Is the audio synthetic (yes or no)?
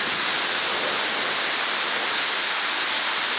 no